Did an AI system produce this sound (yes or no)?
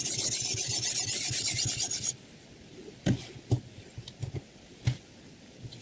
no